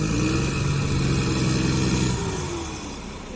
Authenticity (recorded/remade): recorded